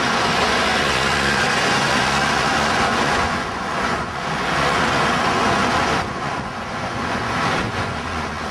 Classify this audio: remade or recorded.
remade